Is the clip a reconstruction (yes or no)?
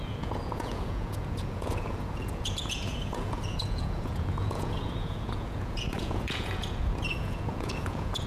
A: yes